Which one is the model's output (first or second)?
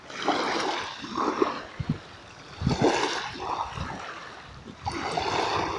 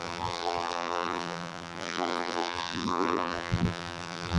second